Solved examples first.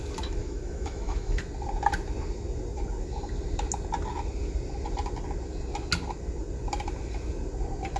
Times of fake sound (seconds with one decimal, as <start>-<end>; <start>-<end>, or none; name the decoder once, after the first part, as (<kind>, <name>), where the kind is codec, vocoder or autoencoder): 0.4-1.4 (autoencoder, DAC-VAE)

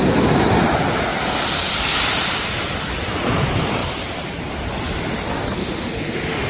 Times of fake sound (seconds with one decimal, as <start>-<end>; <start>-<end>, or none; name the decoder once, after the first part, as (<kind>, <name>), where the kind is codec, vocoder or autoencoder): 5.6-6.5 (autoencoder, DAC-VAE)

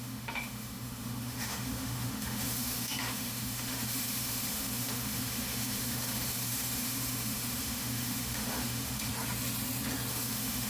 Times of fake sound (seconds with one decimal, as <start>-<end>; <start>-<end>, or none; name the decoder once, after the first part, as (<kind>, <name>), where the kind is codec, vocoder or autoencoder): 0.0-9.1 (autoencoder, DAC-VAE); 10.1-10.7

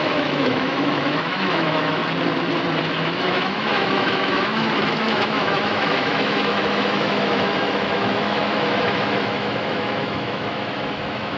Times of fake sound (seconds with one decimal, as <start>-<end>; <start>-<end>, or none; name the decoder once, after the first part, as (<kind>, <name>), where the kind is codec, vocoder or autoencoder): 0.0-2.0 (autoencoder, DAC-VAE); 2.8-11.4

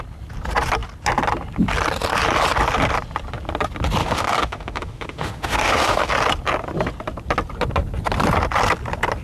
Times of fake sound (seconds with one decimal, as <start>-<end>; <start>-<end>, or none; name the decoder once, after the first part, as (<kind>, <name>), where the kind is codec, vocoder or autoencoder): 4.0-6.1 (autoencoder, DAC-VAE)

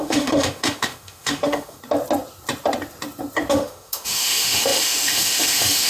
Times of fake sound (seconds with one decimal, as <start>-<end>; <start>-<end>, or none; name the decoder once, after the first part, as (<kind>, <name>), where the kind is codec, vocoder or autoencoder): 0.0-1.8 (autoencoder, DAC-VAE); 3.5-5.9